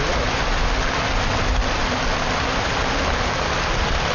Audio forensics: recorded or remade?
recorded